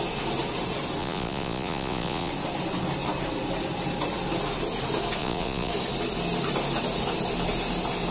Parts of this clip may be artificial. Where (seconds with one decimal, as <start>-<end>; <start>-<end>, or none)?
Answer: 1.0-2.3; 5.2-5.7